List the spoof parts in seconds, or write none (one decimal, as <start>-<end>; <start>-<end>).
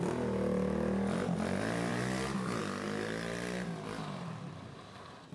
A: none